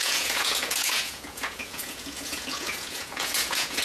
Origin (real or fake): fake